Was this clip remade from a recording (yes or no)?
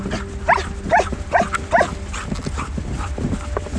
no